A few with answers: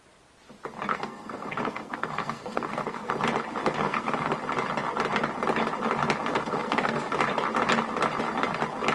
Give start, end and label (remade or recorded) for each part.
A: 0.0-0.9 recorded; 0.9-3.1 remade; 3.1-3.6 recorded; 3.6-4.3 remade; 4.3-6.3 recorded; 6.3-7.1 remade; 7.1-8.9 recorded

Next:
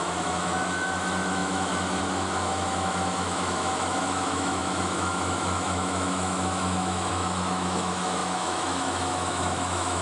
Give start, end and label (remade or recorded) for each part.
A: 0.0-10.0 remade

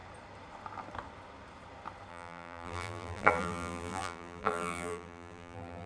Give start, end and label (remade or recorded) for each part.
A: 0.0-2.1 recorded; 2.1-5.9 remade

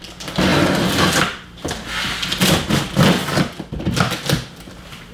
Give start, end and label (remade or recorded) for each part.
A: 0.0-5.1 recorded

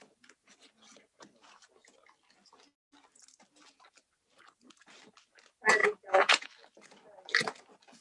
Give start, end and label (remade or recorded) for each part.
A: 0.0-5.8 recorded; 5.8-6.5 remade; 6.5-8.0 recorded

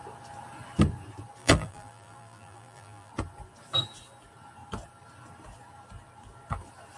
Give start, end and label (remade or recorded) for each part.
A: 0.0-1.4 recorded; 1.4-3.1 remade; 3.1-7.0 recorded

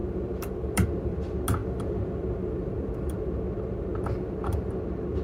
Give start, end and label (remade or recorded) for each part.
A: 0.0-1.2 remade; 1.2-1.6 recorded; 1.6-4.7 remade; 4.7-5.2 recorded